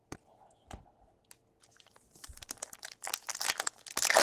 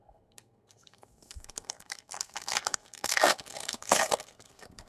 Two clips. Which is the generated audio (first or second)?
second